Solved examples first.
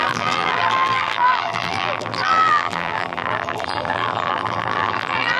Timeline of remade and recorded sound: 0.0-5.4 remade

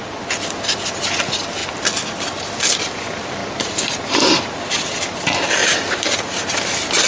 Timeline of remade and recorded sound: 0.0-5.6 recorded; 5.6-6.2 remade; 6.2-7.1 recorded

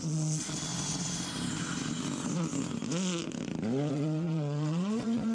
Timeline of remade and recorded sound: 0.0-0.7 remade; 0.7-3.9 recorded; 3.9-5.3 remade

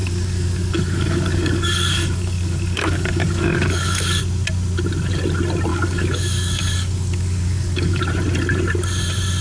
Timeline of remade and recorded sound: 0.0-4.2 remade; 4.2-5.7 recorded; 5.7-8.0 remade; 8.0-9.4 recorded

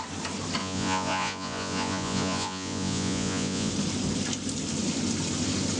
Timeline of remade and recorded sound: 0.0-0.6 recorded; 0.6-3.7 remade; 3.7-5.8 recorded

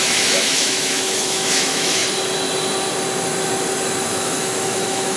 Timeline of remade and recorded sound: 0.0-2.0 remade; 2.0-4.1 recorded; 4.1-5.2 remade

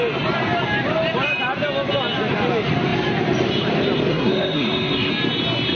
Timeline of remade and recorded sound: 0.0-4.1 recorded; 4.1-5.1 remade; 5.1-5.7 recorded